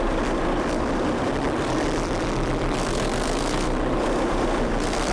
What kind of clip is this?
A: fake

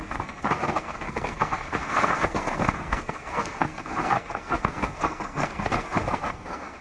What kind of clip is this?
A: fake